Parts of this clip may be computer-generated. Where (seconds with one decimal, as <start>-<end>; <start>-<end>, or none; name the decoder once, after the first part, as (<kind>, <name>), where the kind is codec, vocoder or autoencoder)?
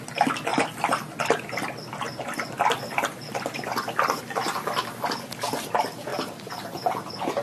0.5-4.2 (vocoder, BigVGAN v2)